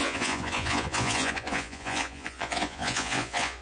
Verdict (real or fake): fake